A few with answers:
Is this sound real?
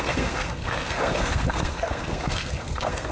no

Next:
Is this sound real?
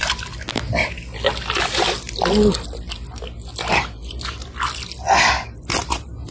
yes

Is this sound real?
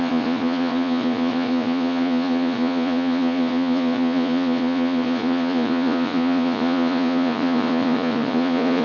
no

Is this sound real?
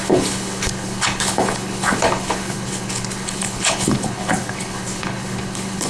no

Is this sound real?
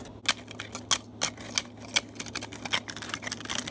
yes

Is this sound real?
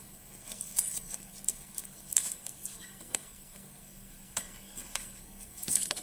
no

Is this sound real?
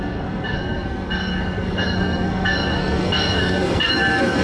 no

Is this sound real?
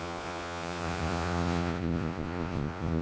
no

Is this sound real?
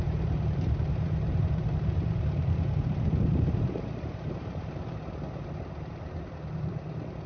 no